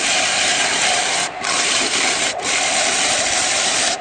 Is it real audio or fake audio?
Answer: fake